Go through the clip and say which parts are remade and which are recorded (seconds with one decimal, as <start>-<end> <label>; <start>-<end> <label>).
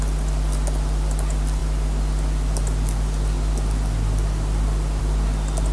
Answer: 0.0-5.7 recorded